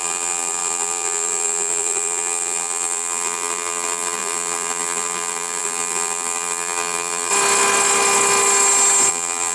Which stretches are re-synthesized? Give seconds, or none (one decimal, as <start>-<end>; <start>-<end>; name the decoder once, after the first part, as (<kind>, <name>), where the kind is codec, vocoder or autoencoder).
0.0-7.3 (vocoder, BigVGAN v2); 9.1-9.5